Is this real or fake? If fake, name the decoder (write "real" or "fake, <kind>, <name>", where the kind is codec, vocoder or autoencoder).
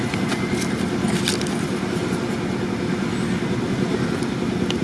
real